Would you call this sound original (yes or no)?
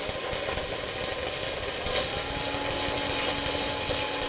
yes